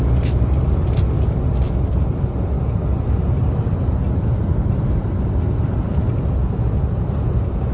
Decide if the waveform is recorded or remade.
recorded